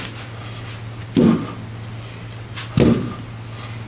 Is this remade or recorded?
recorded